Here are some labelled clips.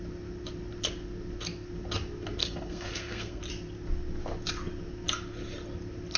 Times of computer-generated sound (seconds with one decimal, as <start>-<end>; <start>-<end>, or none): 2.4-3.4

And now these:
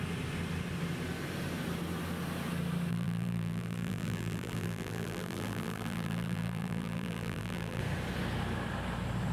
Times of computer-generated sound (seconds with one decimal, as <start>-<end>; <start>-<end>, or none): 2.9-7.8

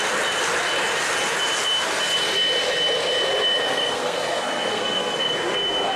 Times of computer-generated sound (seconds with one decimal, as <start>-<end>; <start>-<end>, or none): 3.7-5.3

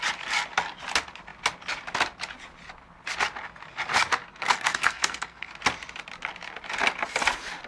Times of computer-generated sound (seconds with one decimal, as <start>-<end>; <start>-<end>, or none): 4.3-5.5

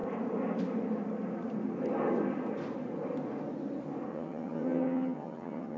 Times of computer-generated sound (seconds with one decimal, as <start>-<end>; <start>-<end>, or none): 4.1-5.8

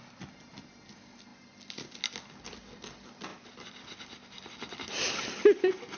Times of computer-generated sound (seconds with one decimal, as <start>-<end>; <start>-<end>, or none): 3.3-4.5

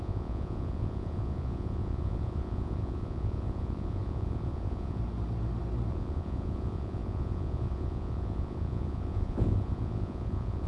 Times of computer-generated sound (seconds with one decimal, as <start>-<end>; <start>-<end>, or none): 0.0-5.0; 5.9-10.7

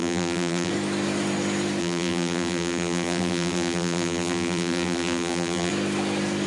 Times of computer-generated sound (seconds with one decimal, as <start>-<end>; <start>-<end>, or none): 0.0-0.7; 1.8-5.7